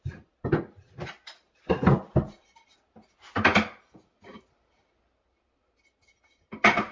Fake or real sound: real